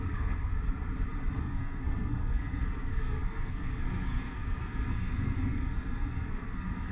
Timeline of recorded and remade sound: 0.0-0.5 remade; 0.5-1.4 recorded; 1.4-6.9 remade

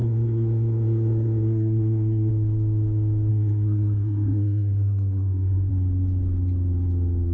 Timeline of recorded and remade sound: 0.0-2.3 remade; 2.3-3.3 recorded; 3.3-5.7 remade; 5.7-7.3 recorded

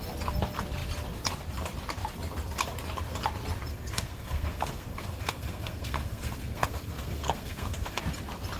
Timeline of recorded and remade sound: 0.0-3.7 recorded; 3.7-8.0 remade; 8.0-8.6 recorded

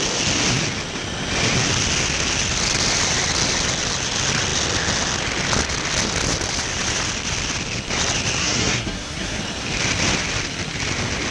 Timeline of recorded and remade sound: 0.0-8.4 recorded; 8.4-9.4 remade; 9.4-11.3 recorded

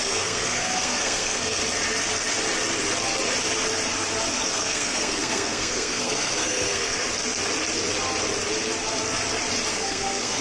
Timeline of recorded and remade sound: 0.0-1.6 remade; 1.6-4.5 recorded; 4.5-7.1 remade; 7.1-9.7 recorded; 9.7-10.4 remade

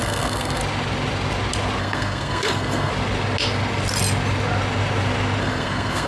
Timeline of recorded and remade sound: 0.0-0.6 remade; 0.6-1.8 recorded; 1.8-2.9 remade; 2.9-5.4 recorded; 5.4-6.1 remade

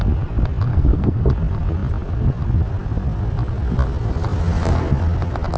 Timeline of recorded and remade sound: 0.0-0.7 recorded; 0.7-1.3 remade; 1.3-5.6 recorded

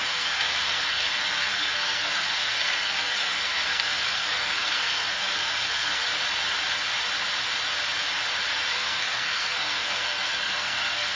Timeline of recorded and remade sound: 0.0-6.0 remade; 6.0-8.7 recorded; 8.7-11.2 remade